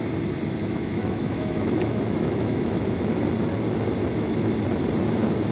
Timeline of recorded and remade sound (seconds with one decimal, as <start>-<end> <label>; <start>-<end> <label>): 0.0-0.6 recorded; 0.6-3.2 remade; 3.2-4.0 recorded; 4.0-4.5 remade; 4.5-5.5 recorded